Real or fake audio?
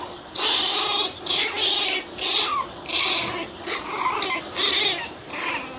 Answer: real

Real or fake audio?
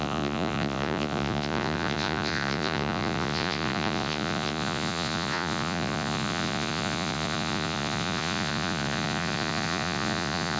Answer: fake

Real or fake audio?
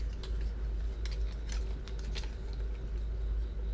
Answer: real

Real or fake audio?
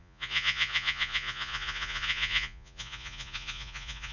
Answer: fake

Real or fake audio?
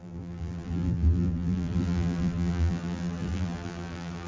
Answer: fake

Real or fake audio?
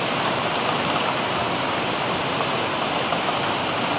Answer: real